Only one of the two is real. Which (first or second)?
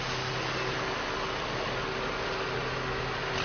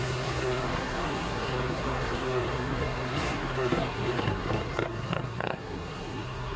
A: first